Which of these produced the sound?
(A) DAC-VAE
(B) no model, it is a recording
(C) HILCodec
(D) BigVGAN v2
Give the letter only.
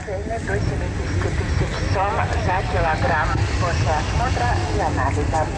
B